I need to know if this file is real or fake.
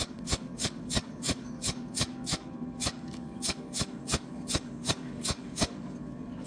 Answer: fake